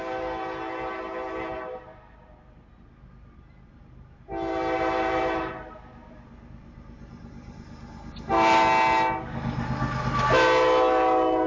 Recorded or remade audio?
recorded